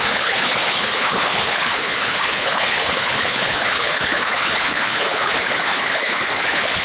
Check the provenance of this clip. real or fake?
fake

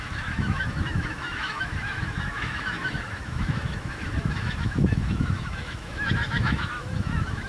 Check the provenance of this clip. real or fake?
fake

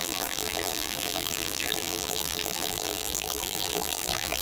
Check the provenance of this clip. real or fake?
fake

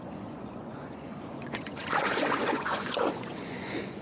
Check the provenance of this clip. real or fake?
fake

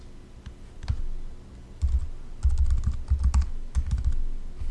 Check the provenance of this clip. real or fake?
real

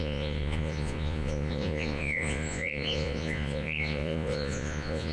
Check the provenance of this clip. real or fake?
fake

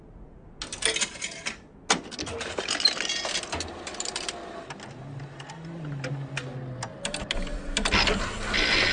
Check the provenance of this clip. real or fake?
real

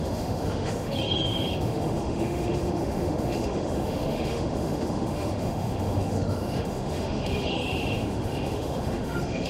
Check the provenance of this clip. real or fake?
fake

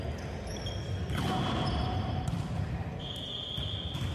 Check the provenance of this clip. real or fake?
real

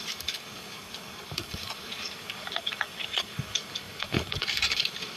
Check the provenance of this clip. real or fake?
fake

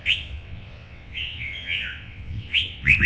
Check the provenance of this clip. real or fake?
fake